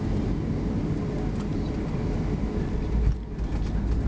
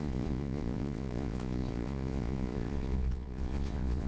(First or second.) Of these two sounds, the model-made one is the second